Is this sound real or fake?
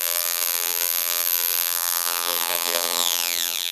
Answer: fake